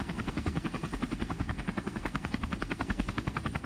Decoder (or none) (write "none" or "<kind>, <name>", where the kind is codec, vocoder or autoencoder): codec, SNAC